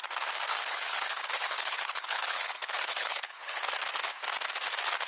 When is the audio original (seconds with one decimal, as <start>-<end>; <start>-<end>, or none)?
0.0-0.5; 3.6-5.1